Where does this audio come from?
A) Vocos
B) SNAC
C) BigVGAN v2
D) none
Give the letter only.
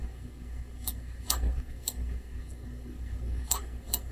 B